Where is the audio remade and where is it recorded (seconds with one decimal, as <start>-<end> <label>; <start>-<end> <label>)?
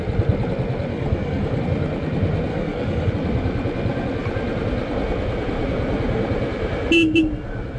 0.0-0.9 recorded; 0.9-1.6 remade; 1.6-2.5 recorded; 2.5-3.1 remade; 3.1-7.8 recorded